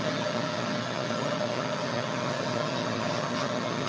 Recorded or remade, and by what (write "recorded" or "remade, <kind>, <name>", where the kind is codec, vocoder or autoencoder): remade, vocoder, HiFi-GAN